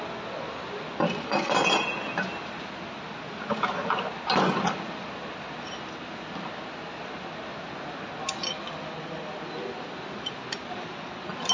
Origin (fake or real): real